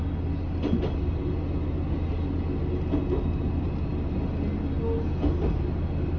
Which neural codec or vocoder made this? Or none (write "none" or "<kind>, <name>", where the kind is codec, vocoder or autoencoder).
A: none